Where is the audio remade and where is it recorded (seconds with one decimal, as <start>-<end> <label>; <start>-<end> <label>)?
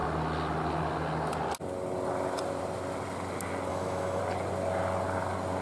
0.0-3.7 recorded; 3.7-4.2 remade; 4.2-5.6 recorded